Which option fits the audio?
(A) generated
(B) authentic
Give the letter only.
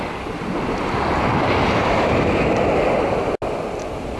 B